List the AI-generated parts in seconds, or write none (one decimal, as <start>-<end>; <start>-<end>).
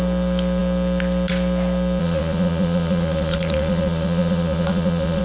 2.0-5.2